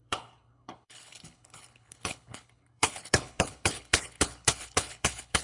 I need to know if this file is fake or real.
fake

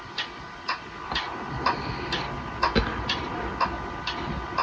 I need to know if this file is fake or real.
real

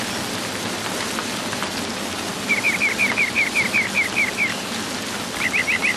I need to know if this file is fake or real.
real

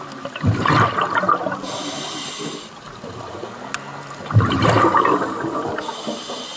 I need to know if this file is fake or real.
real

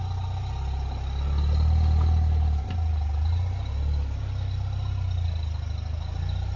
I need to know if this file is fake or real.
real